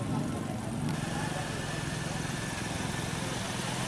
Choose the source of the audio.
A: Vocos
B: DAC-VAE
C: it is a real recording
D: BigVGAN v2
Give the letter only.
C